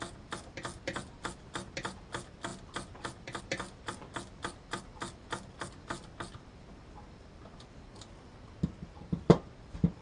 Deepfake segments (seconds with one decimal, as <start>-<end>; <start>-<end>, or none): none